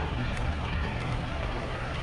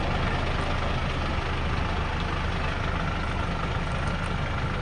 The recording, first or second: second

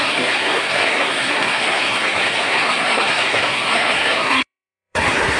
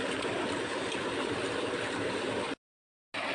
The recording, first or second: second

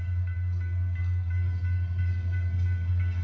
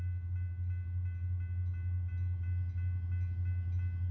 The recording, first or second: second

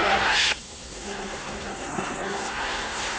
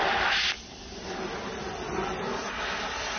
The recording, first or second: second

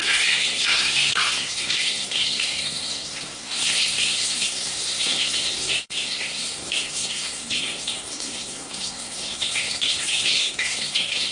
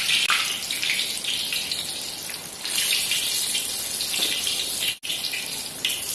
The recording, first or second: second